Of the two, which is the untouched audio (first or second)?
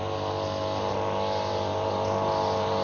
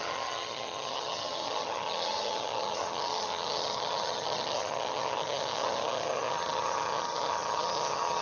first